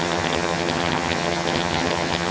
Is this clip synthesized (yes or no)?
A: yes